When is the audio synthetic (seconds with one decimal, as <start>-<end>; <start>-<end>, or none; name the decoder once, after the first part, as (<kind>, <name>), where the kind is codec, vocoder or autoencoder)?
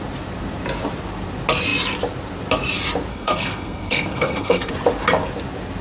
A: 3.1-4.7 (codec, SNAC)